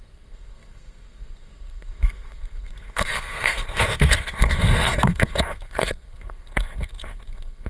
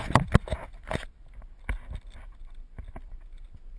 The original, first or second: second